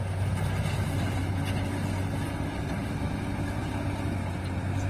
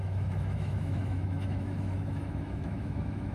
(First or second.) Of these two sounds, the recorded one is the first